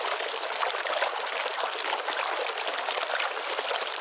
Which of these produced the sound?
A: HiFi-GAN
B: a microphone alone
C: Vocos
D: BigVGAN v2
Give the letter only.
D